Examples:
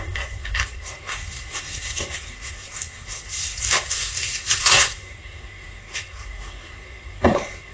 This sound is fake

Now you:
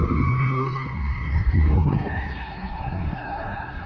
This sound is fake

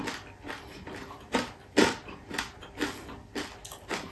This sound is real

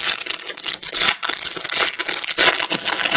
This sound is real